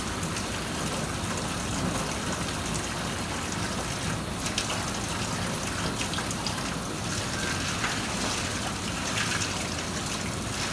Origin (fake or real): real